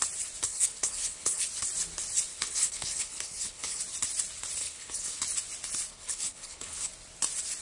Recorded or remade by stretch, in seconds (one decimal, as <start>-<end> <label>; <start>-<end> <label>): 0.0-0.5 recorded; 0.5-1.4 remade; 1.4-2.3 recorded; 2.3-3.8 remade; 3.8-4.6 recorded; 4.6-5.2 remade; 5.2-5.9 recorded; 5.9-6.9 remade; 6.9-7.6 recorded